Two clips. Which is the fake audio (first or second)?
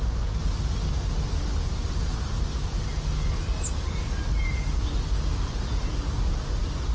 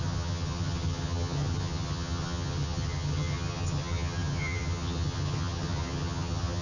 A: second